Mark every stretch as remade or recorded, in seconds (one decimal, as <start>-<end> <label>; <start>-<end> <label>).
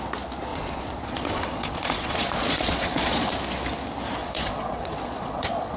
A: 0.0-0.5 recorded; 0.5-3.3 remade; 3.3-4.2 recorded; 4.2-5.8 remade